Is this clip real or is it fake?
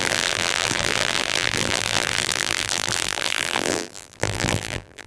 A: fake